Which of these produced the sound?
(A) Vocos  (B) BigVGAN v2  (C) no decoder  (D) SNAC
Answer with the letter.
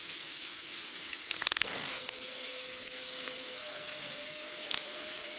D